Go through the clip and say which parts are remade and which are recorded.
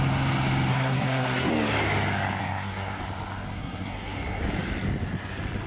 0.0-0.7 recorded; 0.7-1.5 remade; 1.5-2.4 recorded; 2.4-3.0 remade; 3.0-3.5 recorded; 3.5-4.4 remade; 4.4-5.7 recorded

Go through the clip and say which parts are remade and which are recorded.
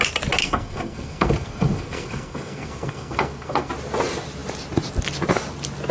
0.0-0.4 recorded; 0.4-3.7 remade; 3.7-5.9 recorded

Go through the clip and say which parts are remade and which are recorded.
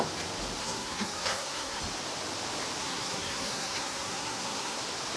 0.0-0.6 recorded; 0.6-1.8 remade; 1.8-2.8 recorded; 2.8-4.8 remade; 4.8-5.2 recorded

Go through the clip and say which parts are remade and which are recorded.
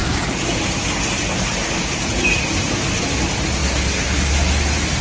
0.0-5.0 recorded